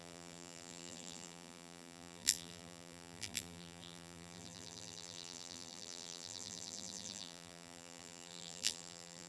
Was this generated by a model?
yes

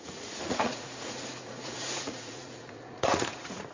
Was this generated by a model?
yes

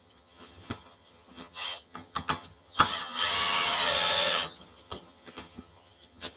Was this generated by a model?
yes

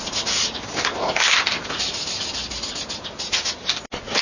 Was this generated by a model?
no